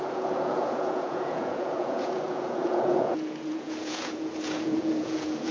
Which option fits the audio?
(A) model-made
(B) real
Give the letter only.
A